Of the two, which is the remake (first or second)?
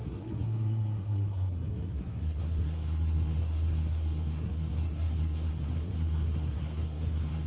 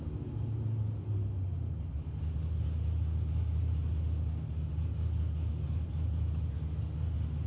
first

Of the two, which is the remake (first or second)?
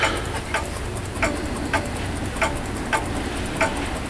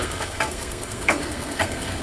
second